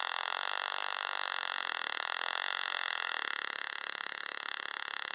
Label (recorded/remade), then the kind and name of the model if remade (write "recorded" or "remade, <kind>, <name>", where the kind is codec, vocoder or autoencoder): remade, autoencoder, DAC-VAE